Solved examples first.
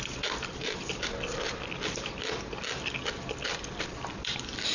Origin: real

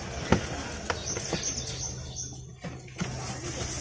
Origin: real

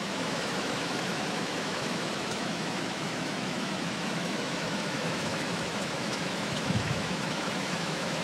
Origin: fake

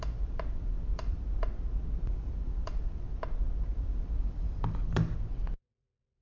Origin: fake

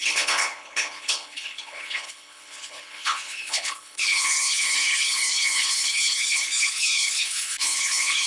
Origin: fake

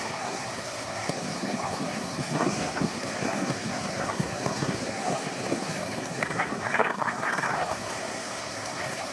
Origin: fake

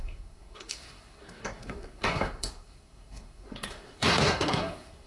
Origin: fake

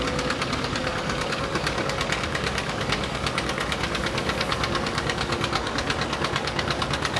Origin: fake